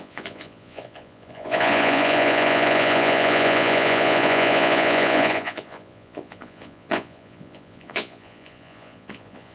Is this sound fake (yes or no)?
yes